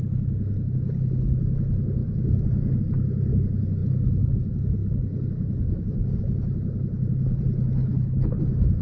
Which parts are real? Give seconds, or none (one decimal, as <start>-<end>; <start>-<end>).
0.0-7.8; 8.4-8.8